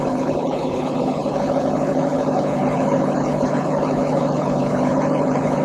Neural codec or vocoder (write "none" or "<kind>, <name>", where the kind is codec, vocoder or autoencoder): codec, HILCodec